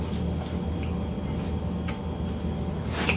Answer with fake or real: real